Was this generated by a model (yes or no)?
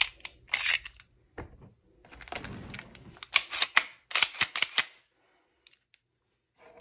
no